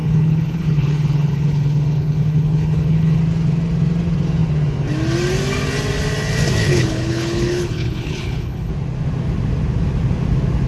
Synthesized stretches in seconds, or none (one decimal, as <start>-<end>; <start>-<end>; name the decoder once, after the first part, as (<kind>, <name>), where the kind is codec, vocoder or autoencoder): 0.0-3.2 (codec, HILCodec); 6.6-8.7